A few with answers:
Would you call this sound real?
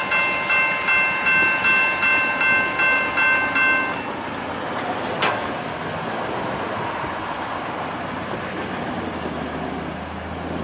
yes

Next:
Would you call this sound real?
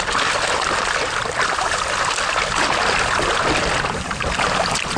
yes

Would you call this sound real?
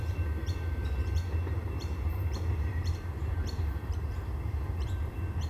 no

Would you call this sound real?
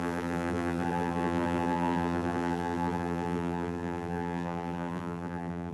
no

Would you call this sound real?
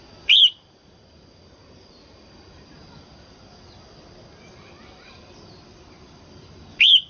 no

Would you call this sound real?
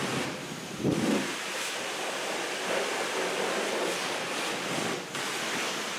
no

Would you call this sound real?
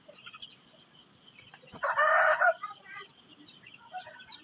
yes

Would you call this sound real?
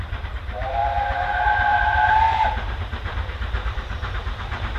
no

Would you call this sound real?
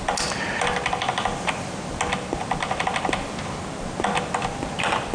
yes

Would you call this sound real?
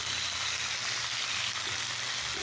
yes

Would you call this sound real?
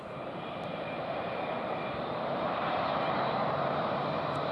no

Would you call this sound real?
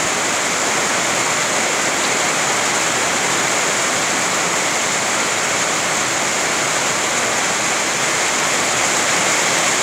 yes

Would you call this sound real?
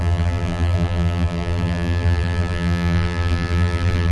no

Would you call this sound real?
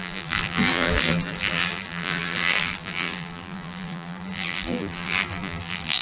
no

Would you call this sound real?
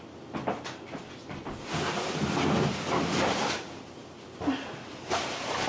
yes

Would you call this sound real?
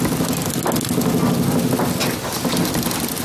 yes